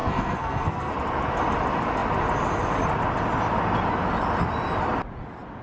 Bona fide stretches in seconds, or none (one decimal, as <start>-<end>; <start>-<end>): 0.9-5.6